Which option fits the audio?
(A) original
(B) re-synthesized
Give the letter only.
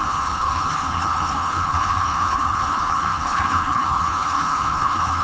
B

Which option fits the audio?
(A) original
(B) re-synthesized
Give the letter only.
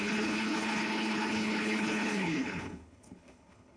B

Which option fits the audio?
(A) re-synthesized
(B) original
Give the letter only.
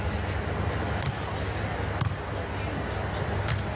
B